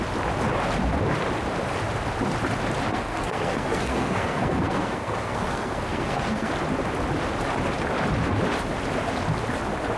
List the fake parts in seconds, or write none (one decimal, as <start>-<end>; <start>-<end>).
2.9-6.5